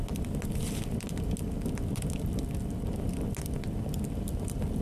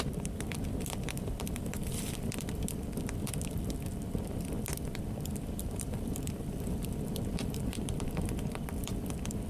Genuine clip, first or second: first